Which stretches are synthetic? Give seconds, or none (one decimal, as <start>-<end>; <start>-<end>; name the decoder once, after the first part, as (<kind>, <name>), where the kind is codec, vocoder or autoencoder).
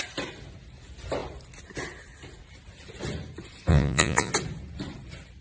3.7-4.3 (vocoder, Vocos)